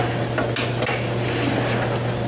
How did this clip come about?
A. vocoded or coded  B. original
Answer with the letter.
B